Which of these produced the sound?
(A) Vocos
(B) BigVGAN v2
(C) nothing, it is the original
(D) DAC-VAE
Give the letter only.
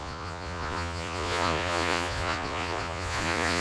A